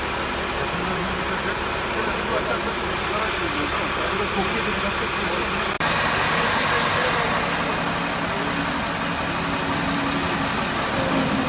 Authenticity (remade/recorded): recorded